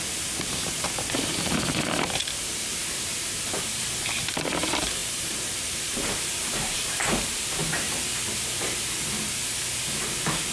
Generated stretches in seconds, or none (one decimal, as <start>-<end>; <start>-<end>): 0.0-7.6; 9.8-10.5